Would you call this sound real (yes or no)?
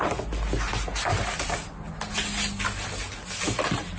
yes